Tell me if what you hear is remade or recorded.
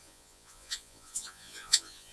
remade